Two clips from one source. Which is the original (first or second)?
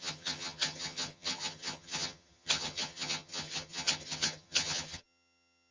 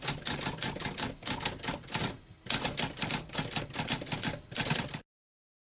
second